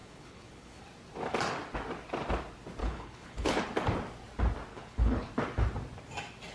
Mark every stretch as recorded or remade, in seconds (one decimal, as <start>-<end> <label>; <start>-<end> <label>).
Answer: 0.0-0.8 remade; 0.8-2.8 recorded; 2.8-3.6 remade; 3.6-4.7 recorded; 4.7-5.3 remade; 5.3-6.5 recorded